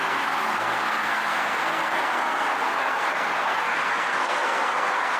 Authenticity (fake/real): fake